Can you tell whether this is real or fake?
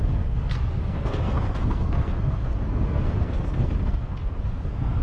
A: fake